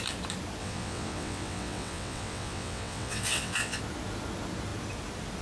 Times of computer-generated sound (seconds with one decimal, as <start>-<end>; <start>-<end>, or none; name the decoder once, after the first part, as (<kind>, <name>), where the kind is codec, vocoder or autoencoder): 0.6-3.8 (vocoder, WaveNeXt)